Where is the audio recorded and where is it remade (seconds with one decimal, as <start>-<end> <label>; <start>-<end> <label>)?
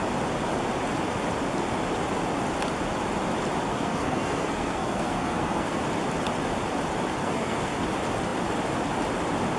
0.0-3.7 recorded; 3.7-5.8 remade; 5.8-7.2 recorded; 7.2-7.8 remade; 7.8-9.6 recorded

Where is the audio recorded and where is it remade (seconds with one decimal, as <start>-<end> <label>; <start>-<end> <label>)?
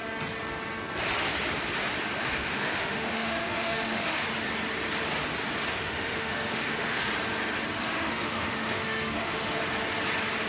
0.0-2.2 recorded; 2.2-4.2 remade; 4.2-5.7 recorded; 5.7-7.1 remade; 7.1-7.8 recorded; 7.8-9.6 remade; 9.6-10.5 recorded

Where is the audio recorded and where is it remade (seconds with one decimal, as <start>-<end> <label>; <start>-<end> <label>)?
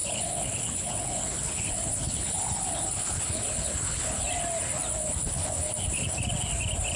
0.0-4.2 remade; 4.2-5.0 recorded; 5.0-6.1 remade; 6.1-7.0 recorded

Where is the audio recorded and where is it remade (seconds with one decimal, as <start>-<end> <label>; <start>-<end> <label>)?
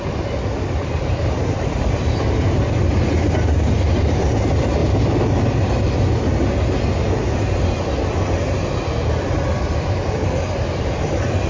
0.0-4.8 remade; 4.8-9.1 recorded; 9.1-11.5 remade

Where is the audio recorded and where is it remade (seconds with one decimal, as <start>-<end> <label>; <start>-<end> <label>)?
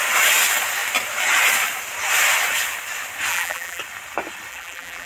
0.0-3.3 recorded; 3.3-3.8 remade; 3.8-4.5 recorded; 4.5-5.1 remade